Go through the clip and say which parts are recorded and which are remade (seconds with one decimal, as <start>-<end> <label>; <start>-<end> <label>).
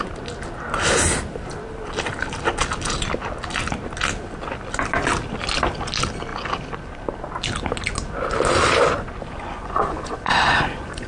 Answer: 0.0-9.4 recorded; 9.4-11.1 remade